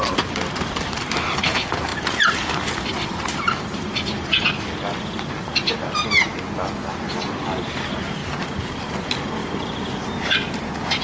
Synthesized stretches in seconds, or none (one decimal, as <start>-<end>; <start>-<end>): none